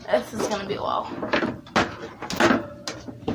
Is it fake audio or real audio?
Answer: real